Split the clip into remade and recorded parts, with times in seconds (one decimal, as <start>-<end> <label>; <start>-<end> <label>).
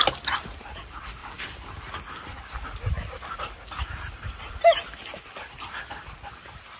0.0-6.8 recorded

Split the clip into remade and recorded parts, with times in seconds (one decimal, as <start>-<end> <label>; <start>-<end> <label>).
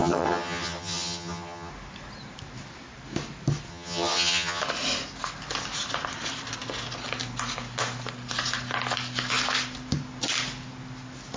0.0-1.7 remade; 1.7-3.7 recorded; 3.7-4.6 remade; 4.6-11.4 recorded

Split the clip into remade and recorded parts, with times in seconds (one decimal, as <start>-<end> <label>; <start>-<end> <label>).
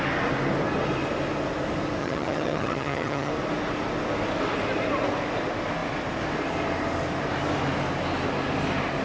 0.0-2.0 recorded; 2.0-3.3 remade; 3.3-9.0 recorded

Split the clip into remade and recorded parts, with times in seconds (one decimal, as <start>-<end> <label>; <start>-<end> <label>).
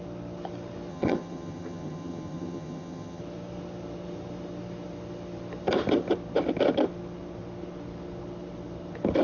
0.0-0.9 recorded; 0.9-3.2 remade; 3.2-9.2 recorded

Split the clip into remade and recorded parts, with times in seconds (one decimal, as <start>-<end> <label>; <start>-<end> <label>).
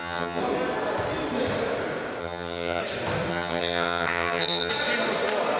0.0-0.4 remade; 0.4-2.2 recorded; 2.2-2.8 remade; 2.8-3.3 recorded; 3.3-4.7 remade; 4.7-5.6 recorded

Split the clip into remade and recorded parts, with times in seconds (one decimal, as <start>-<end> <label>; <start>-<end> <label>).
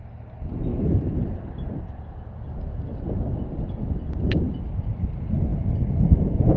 0.0-6.6 recorded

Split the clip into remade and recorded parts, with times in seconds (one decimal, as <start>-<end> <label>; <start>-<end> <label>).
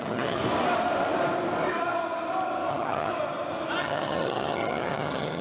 0.0-0.4 remade; 0.4-2.7 recorded; 2.7-3.1 remade; 3.1-3.8 recorded; 3.8-5.4 remade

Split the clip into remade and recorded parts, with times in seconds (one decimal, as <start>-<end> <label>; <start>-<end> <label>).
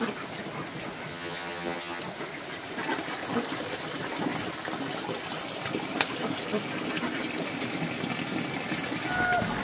0.0-1.1 recorded; 1.1-2.0 remade; 2.0-9.6 recorded